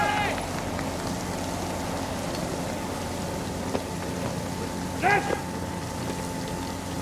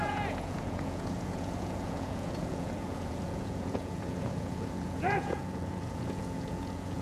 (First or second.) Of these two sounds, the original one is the first